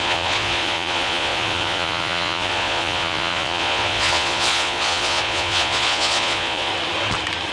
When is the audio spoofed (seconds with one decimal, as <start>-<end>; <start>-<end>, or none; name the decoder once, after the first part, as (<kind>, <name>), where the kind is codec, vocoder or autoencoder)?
0.0-6.7 (vocoder, Vocos)